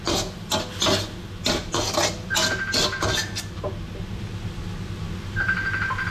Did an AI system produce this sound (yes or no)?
no